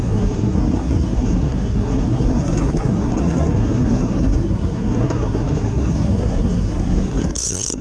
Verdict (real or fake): fake